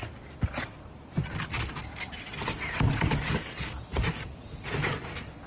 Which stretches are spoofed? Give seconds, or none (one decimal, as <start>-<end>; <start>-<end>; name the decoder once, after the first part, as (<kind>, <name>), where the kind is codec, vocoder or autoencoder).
none